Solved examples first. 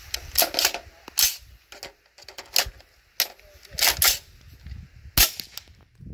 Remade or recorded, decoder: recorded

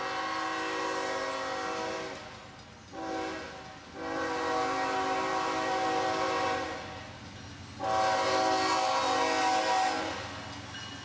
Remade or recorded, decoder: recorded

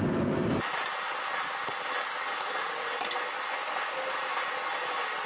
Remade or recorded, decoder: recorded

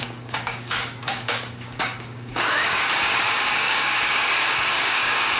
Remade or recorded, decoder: remade, codec, DAC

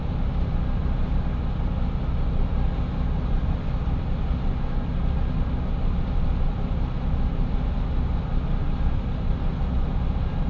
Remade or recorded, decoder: recorded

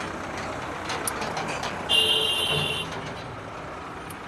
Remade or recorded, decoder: recorded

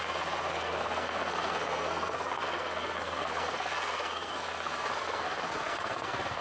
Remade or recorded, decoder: remade, codec, SNAC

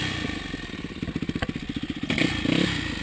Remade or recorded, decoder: recorded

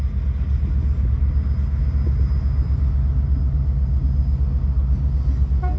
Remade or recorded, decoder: recorded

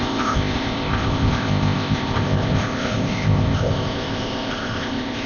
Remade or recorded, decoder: remade, codec, ZipCodec